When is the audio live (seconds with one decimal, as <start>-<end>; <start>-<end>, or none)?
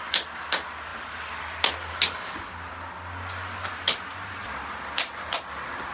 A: 0.0-5.9